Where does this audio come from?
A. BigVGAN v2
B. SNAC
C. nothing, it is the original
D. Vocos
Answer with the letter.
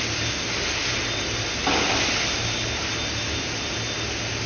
C